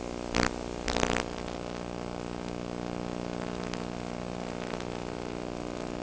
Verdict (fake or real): real